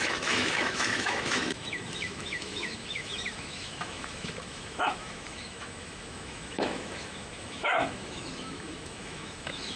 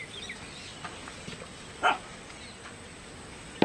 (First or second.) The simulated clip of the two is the first